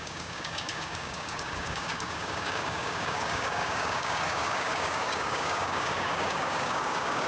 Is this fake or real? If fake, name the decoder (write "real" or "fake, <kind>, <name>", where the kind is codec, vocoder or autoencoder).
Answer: fake, codec, DAC